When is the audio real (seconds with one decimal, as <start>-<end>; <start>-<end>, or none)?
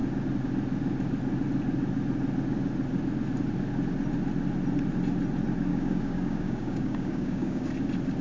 0.0-5.7; 7.7-8.2